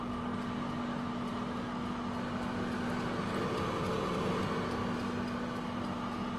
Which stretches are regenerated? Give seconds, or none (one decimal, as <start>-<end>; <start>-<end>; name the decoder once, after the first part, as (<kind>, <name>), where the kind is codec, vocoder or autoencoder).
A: none